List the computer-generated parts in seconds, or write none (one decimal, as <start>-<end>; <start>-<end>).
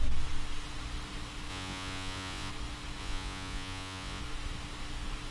1.5-2.5; 3.0-4.2